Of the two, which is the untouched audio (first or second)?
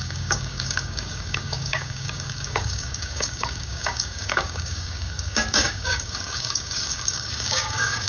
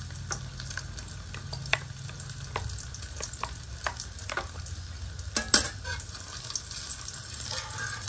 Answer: second